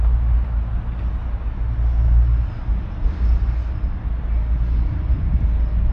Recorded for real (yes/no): yes